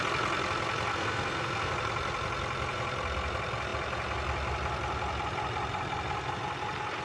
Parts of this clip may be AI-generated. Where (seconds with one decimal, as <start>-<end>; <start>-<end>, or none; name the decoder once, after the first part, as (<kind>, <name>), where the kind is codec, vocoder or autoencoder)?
0.9-1.7 (codec, SNAC)